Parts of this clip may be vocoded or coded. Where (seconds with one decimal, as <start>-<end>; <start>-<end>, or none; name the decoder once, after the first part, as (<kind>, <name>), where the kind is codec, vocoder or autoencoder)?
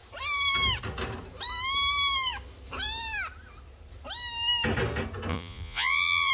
5.3-6.3 (vocoder, Vocos)